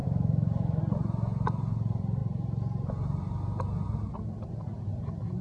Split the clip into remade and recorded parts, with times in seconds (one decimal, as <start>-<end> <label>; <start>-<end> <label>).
0.0-0.8 remade; 0.8-5.4 recorded